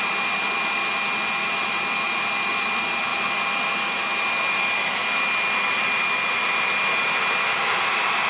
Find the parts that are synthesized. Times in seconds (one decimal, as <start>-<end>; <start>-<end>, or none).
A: none